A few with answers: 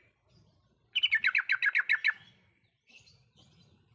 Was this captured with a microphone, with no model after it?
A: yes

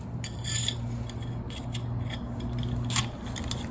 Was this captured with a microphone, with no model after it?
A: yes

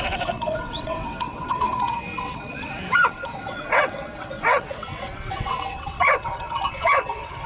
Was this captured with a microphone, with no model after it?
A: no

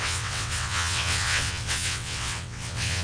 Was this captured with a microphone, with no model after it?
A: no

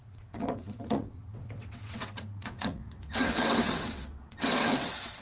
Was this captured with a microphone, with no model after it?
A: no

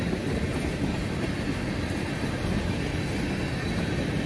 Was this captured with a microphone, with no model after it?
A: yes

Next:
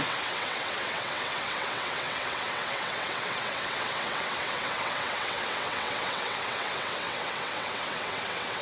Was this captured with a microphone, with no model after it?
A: no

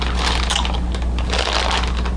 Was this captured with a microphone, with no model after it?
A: yes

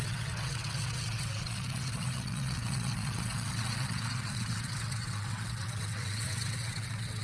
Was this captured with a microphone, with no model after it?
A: no